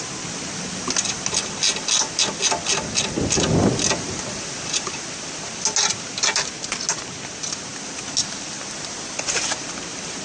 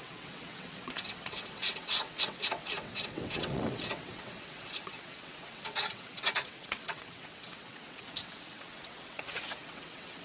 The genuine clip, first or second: first